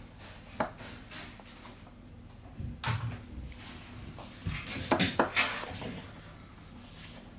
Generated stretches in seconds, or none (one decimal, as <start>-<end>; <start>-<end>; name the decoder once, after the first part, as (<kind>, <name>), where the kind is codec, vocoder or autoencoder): none